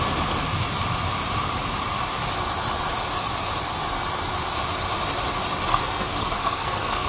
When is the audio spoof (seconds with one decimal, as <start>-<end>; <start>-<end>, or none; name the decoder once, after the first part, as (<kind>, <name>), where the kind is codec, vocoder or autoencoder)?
5.7-7.1 (codec, SNAC)